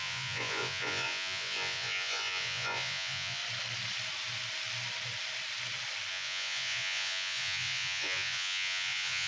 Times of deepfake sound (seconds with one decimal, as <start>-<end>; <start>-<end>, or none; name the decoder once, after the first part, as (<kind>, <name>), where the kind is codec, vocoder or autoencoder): 0.0-3.4 (vocoder, Vocos); 6.1-9.3